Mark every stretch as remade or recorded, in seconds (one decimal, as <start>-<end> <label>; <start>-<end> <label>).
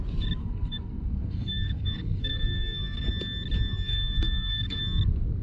0.0-0.4 recorded; 0.4-3.1 remade; 3.1-3.7 recorded; 3.7-4.8 remade; 4.8-5.4 recorded